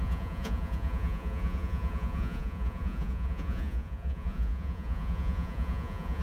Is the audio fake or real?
fake